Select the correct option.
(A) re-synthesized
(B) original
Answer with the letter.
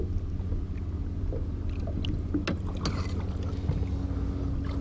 B